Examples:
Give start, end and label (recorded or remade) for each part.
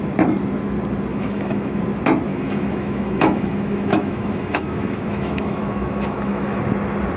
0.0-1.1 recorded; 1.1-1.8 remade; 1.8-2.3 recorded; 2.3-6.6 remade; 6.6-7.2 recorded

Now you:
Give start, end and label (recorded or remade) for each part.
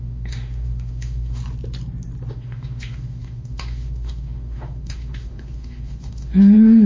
0.0-1.4 remade; 1.4-2.3 recorded; 2.3-6.9 remade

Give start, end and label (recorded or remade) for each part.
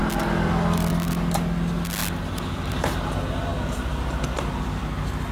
0.0-5.3 recorded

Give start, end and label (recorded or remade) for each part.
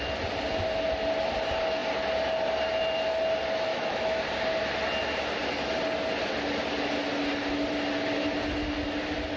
0.0-3.7 recorded; 3.7-4.2 remade; 4.2-9.4 recorded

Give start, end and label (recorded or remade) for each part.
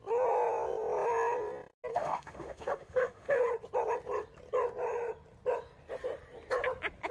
0.0-1.9 recorded; 1.9-3.4 remade; 3.4-7.1 recorded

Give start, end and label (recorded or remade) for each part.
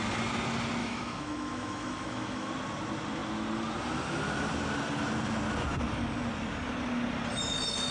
0.0-0.8 recorded; 0.8-2.5 remade; 2.5-7.9 recorded